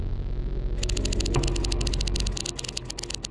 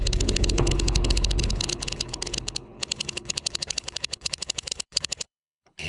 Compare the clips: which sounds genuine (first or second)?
first